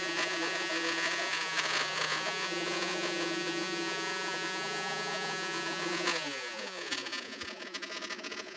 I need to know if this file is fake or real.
fake